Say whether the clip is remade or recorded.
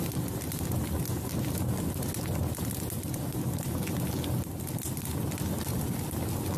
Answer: recorded